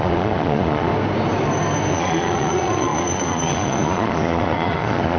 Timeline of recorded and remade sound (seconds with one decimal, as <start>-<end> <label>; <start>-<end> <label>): 0.0-0.9 remade; 0.9-1.9 recorded; 1.9-5.2 remade